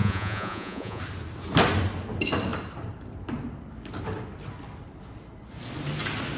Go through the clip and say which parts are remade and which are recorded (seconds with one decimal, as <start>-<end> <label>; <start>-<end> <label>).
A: 0.0-1.0 remade; 1.0-6.4 recorded